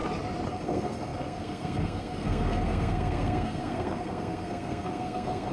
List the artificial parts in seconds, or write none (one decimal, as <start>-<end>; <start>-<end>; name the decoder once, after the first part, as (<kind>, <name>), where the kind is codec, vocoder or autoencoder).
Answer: 0.5-5.5 (codec, SNAC)